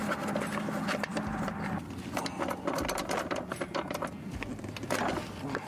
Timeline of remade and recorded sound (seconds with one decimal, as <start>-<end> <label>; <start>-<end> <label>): 0.0-1.1 recorded; 1.1-3.3 remade; 3.3-5.7 recorded